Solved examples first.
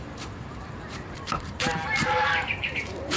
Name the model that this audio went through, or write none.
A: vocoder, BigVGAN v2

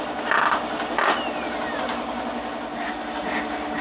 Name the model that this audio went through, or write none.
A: none